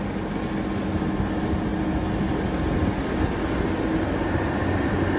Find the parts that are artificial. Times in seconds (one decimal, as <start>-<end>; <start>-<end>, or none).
none